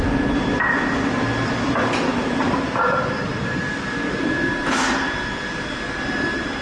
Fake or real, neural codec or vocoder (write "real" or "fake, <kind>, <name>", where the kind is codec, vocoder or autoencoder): fake, vocoder, BigVGAN v2